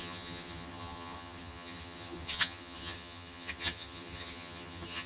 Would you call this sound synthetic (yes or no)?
yes